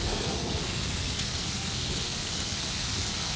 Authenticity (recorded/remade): remade